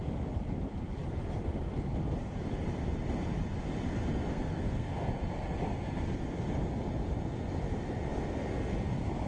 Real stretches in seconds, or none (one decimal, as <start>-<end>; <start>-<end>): 0.0-4.3; 4.9-9.3